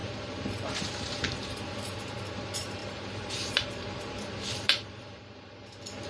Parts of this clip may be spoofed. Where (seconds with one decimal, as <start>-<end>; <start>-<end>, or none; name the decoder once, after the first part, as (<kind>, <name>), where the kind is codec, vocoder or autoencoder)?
0.0-2.0 (vocoder, BigVGAN v2); 2.8-5.4